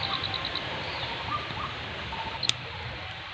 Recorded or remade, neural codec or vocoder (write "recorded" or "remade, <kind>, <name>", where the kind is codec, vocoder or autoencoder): remade, vocoder, BigVGAN v2